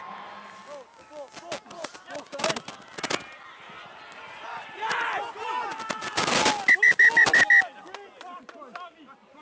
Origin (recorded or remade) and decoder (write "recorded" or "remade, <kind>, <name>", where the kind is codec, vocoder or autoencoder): recorded